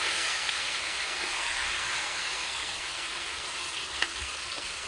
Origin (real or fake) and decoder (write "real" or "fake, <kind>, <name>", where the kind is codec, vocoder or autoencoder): fake, codec, SNAC